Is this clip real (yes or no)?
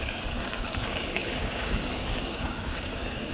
no